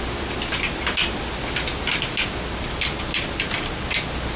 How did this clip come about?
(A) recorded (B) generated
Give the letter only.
A